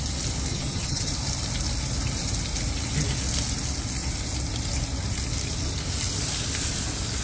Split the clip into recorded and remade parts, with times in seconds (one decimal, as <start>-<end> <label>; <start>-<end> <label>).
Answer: 0.0-0.5 recorded; 0.5-1.1 remade; 1.1-7.2 recorded